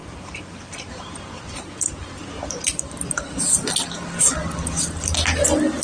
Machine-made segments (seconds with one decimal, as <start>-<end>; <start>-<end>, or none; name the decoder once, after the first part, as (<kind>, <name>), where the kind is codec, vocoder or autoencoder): 0.0-3.2 (vocoder, BigVGAN v2)